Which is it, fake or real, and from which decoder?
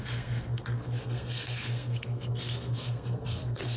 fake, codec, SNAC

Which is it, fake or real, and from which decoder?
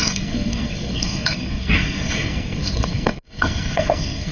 fake, codec, SNAC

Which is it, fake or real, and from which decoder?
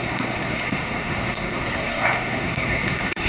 fake, codec, SNAC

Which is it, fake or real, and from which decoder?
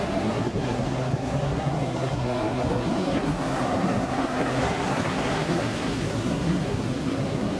fake, codec, SNAC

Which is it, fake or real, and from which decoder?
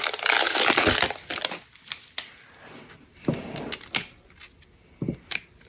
real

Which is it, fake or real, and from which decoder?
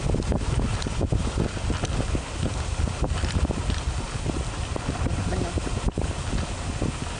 real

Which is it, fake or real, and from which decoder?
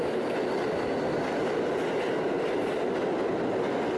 real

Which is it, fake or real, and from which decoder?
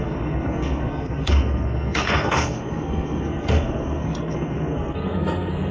fake, codec, SNAC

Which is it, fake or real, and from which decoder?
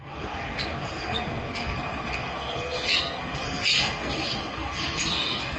fake, codec, SNAC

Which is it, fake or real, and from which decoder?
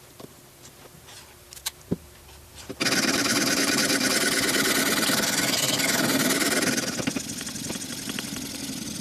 real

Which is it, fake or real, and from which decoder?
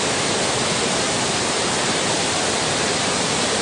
real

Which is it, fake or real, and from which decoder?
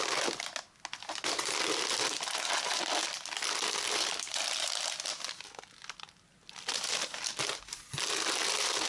real